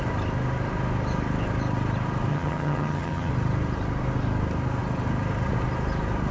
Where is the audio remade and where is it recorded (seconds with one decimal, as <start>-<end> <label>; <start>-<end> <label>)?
0.0-2.3 recorded; 2.3-3.3 remade; 3.3-6.3 recorded

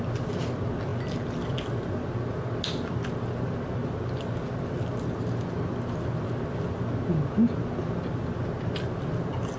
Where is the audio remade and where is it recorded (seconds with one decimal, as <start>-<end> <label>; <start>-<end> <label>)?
0.0-9.6 recorded

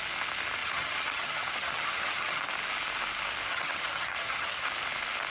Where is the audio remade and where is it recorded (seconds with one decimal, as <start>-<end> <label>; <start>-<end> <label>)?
0.0-0.6 recorded; 0.6-2.4 remade; 2.4-3.5 recorded; 3.5-4.7 remade; 4.7-5.3 recorded

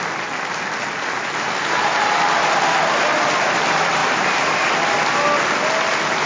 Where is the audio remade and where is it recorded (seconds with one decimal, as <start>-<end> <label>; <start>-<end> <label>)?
0.0-6.3 recorded